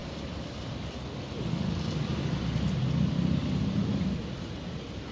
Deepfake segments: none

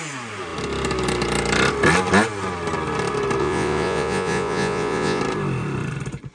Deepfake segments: 3.4-5.2 (vocoder, Vocos)

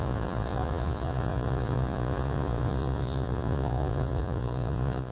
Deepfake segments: 0.0-5.1 (vocoder, Vocos)

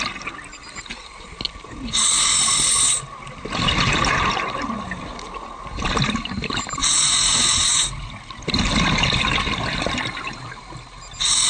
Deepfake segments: none

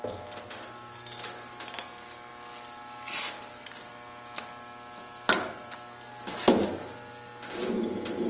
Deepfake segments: none

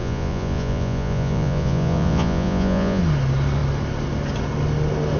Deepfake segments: 0.0-3.0 (vocoder, Vocos)

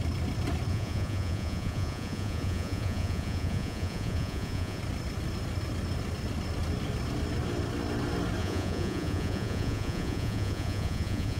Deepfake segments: 0.7-4.8 (vocoder, Vocos); 8.4-11.4